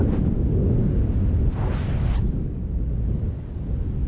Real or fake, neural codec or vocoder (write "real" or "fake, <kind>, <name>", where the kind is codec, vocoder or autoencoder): real